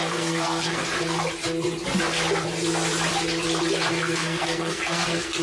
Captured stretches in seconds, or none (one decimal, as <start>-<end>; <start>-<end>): 0.8-3.9